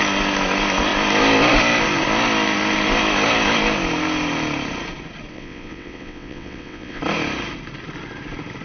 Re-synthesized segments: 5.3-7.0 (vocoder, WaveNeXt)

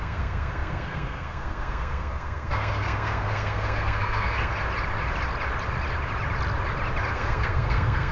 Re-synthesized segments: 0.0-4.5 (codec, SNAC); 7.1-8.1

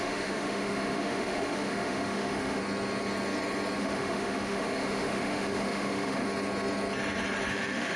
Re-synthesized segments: 0.0-2.6 (autoencoder, DAC-VAE); 3.8-6.2; 7.5-8.0